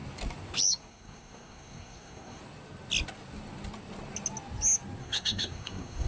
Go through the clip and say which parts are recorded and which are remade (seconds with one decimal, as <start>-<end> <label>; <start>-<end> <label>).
0.0-0.7 recorded; 0.7-2.4 remade; 2.4-5.0 recorded; 5.0-6.1 remade